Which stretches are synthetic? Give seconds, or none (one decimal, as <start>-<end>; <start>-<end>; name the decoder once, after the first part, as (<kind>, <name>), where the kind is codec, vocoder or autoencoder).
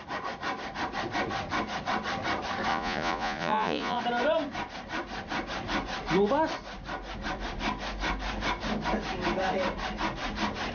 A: 2.7-4.0 (vocoder, Vocos)